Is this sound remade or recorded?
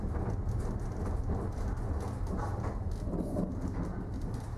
recorded